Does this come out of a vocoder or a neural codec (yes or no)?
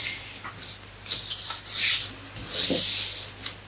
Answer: no